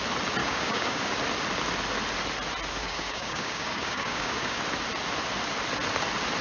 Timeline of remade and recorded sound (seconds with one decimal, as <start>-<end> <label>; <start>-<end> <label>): 0.0-0.4 recorded; 0.4-1.1 remade; 1.1-2.8 recorded; 2.8-4.6 remade; 4.6-6.4 recorded